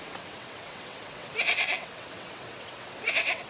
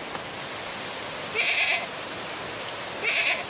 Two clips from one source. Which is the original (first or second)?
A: second